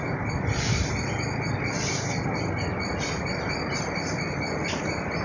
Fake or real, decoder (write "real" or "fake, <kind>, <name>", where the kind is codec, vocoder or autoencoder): fake, vocoder, BigVGAN v2